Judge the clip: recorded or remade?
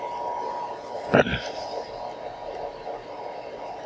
recorded